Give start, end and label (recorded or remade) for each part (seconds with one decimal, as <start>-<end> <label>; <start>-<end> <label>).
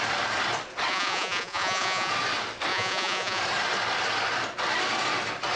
0.0-0.9 recorded; 0.9-2.1 remade; 2.1-2.7 recorded; 2.7-3.4 remade; 3.4-5.6 recorded